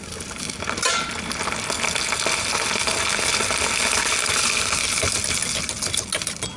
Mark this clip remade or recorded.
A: recorded